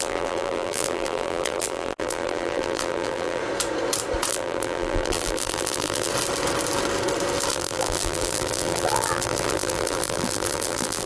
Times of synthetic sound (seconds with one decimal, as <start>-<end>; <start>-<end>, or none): 0.0-3.4; 4.3-6.1; 7.5-11.1